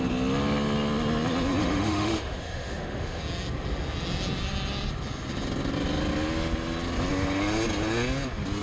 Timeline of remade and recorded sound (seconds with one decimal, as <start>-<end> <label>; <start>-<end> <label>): 0.0-1.6 recorded; 1.6-3.2 remade; 3.2-8.6 recorded